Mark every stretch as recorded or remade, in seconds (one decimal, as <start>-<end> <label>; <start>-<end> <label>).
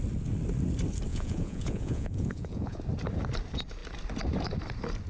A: 0.0-1.1 recorded; 1.1-2.8 remade; 2.8-5.1 recorded